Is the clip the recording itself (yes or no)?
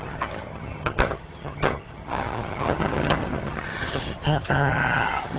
no